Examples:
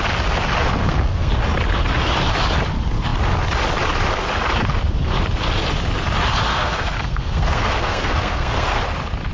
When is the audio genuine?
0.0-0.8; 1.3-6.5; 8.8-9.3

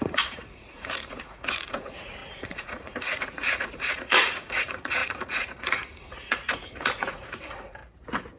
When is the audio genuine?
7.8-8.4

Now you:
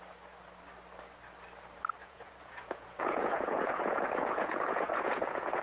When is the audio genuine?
0.0-2.0

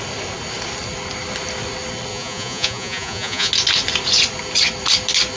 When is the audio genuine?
0.0-2.1; 3.5-5.4

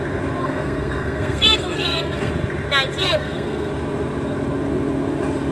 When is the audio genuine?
0.0-0.4; 2.3-3.0; 3.7-5.5

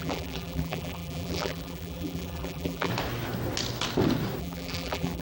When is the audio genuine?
2.9-4.4

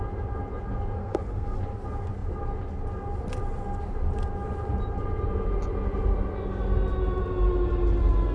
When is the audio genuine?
0.0-1.0; 1.6-8.3

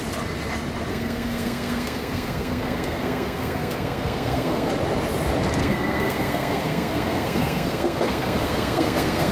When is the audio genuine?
0.0-0.9; 4.7-5.6